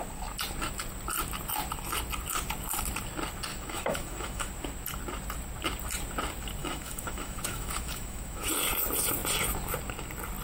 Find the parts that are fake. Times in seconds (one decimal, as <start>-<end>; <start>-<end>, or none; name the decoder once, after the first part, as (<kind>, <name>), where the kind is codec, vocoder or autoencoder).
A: 3.5-4.5 (autoencoder, DAC-VAE); 6.6-8.5